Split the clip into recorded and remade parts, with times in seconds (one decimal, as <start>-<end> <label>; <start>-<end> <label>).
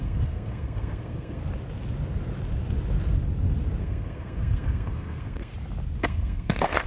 0.0-1.4 remade; 1.4-3.8 recorded; 3.8-5.5 remade; 5.5-6.0 recorded; 6.0-6.9 remade